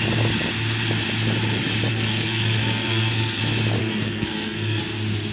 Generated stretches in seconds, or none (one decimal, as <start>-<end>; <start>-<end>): 1.9-3.4; 3.8-4.8